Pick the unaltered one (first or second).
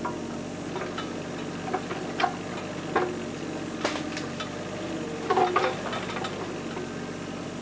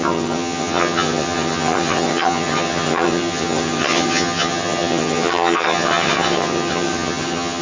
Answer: first